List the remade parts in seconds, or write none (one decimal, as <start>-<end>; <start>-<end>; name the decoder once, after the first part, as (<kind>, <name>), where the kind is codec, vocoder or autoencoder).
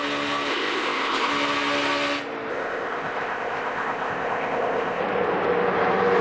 0.5-1.3 (codec, ZipCodec); 2.5-5.0